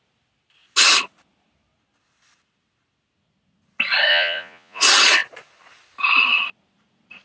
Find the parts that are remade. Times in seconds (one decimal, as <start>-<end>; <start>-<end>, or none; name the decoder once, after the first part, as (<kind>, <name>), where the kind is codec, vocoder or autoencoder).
4.1-4.8 (vocoder, Vocos)

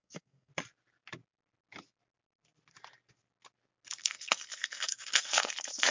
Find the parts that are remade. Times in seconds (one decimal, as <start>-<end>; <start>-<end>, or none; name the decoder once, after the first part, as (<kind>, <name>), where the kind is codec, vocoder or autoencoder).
0.0-0.5 (codec, SNAC); 4.0-5.9

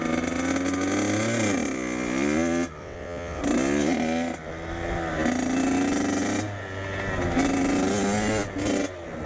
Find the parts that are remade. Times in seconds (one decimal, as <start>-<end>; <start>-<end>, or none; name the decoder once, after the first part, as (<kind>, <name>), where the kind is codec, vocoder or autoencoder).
2.8-3.4 (vocoder, WaveNeXt)